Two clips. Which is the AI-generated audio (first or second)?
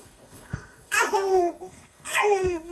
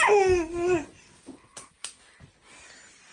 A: first